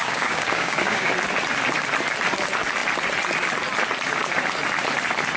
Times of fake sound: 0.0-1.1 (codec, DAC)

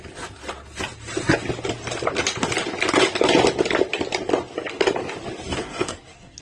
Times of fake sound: 5.6-6.4 (codec, SNAC)